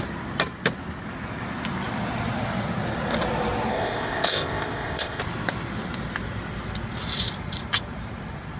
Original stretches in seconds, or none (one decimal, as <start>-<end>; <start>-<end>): 0.0-3.7; 5.2-8.6